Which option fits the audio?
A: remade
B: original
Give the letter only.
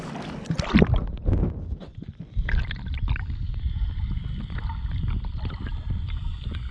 B